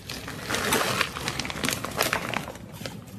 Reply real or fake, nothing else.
fake